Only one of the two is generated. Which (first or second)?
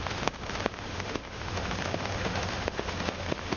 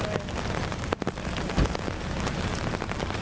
first